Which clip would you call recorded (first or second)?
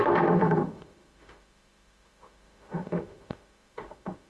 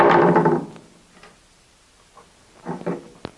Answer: second